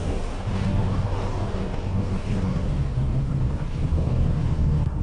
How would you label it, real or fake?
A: fake